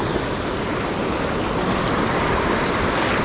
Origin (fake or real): real